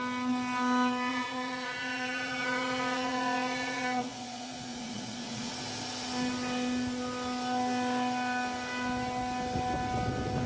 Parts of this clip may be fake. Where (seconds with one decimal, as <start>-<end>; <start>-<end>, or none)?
1.1-5.5